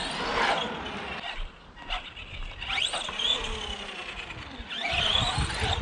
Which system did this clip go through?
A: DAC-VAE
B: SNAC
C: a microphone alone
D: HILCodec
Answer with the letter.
C